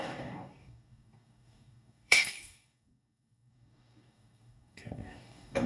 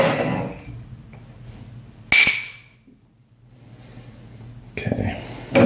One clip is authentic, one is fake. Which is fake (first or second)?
first